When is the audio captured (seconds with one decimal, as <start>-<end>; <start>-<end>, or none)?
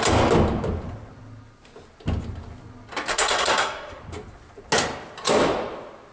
0.0-3.1; 4.0-6.1